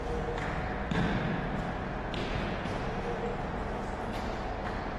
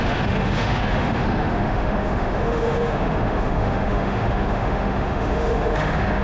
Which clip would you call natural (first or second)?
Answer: first